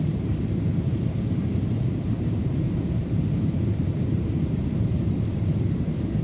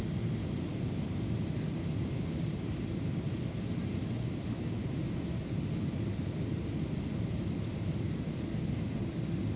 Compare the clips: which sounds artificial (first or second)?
first